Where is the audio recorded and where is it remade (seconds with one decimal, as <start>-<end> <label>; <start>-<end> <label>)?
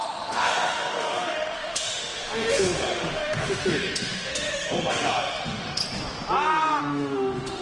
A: 0.0-5.8 remade; 5.8-6.8 recorded; 6.8-7.6 remade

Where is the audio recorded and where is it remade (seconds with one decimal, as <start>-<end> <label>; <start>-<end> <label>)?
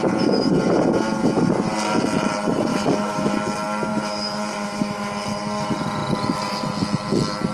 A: 0.0-2.7 recorded; 2.7-3.3 remade; 3.3-3.9 recorded; 3.9-5.1 remade; 5.1-7.5 recorded